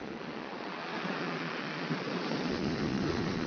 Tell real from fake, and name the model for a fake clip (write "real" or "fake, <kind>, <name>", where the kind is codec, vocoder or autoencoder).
fake, vocoder, Vocos